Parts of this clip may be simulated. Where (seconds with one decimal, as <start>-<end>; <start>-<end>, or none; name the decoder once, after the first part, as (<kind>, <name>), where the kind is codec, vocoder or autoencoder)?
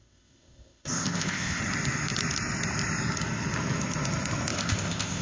0.0-1.6 (codec, ZipCodec); 4.5-5.2